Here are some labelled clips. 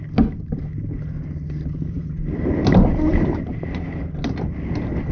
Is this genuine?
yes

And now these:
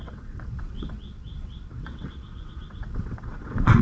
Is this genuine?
no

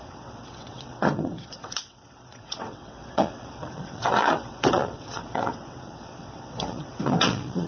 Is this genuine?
no